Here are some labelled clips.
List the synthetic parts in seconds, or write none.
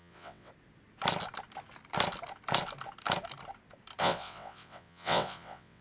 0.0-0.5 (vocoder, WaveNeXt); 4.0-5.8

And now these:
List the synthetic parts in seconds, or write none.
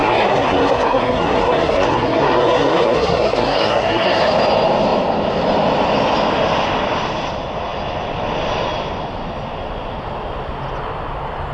0.0-4.2 (codec, SNAC)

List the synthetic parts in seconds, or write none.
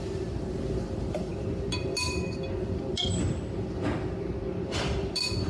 none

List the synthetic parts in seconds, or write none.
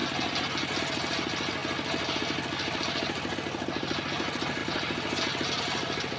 none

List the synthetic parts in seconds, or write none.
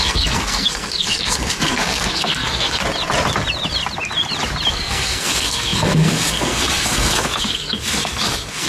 0.0-2.8 (codec, SNAC); 4.7-8.7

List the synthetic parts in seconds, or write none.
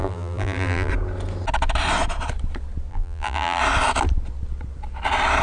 0.0-0.9 (vocoder, BigVGAN v2); 2.9-3.6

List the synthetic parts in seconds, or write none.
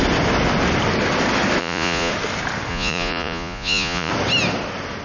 1.6-2.1 (vocoder, Vocos); 2.7-4.1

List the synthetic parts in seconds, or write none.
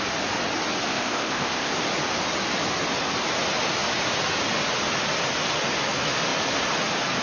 0.9-1.7 (codec, ZipCodec)